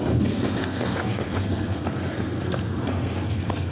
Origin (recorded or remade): remade